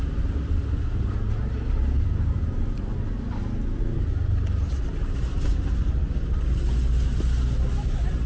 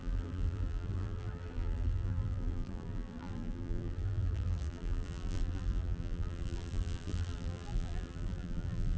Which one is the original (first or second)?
first